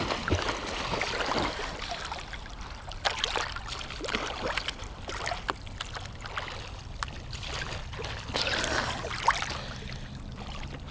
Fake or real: real